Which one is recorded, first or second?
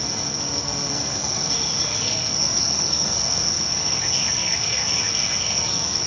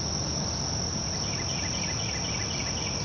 second